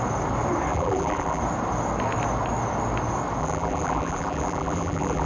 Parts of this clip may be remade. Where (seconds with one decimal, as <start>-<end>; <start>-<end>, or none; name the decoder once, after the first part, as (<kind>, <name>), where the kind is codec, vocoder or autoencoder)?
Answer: 0.7-1.4 (vocoder, BigVGAN v2); 3.4-5.3